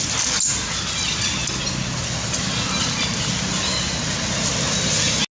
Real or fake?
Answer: real